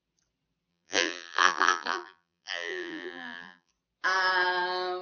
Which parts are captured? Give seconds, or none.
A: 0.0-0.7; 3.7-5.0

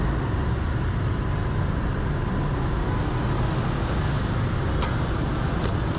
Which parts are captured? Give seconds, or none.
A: 0.0-6.0

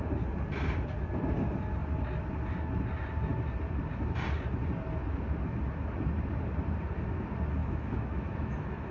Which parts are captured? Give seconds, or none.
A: 0.0-7.6